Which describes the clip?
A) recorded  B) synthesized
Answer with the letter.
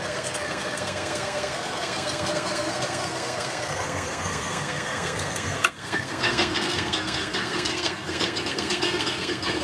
B